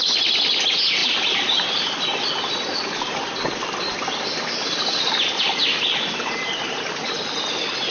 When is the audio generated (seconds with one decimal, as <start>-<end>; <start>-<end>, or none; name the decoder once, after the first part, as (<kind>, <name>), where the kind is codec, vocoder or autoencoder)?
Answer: none